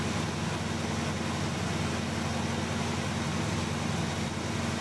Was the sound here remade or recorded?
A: recorded